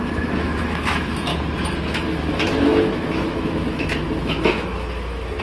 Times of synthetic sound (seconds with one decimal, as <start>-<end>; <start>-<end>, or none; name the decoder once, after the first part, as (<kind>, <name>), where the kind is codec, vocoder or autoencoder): 0.0-1.3 (autoencoder, DAC-VAE); 1.9-5.4